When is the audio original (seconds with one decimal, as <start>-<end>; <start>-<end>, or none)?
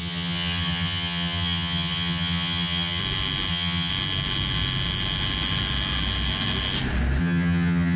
3.0-3.5; 3.9-7.2